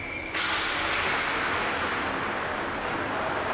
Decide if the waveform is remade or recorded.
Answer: recorded